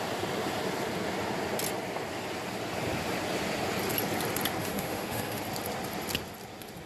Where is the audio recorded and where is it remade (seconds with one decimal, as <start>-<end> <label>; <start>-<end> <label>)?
0.0-4.6 recorded; 4.6-5.4 remade; 5.4-6.9 recorded